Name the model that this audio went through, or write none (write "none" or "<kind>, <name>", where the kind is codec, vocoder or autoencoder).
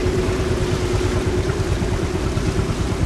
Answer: vocoder, BigVGAN v2